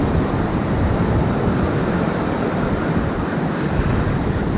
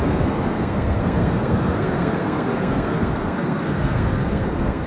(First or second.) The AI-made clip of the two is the second